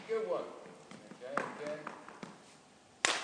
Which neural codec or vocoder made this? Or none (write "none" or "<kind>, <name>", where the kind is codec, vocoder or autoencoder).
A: none